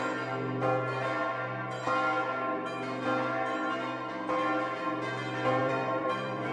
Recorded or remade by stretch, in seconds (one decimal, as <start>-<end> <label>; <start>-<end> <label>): 0.0-5.6 recorded; 5.6-6.5 remade